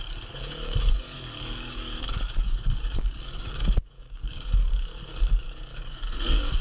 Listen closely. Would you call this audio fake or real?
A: fake